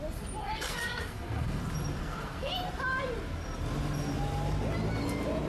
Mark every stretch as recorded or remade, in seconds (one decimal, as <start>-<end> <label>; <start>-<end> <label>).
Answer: 0.0-0.4 recorded; 0.4-1.6 remade; 1.6-2.0 recorded; 2.0-2.5 remade; 2.5-5.5 recorded